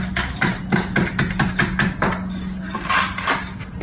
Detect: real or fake real